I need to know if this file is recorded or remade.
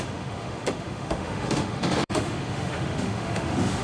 remade